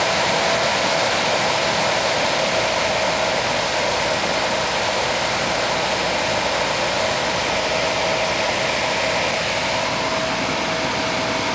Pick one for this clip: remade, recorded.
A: recorded